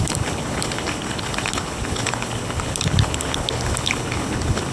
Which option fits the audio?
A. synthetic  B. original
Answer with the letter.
A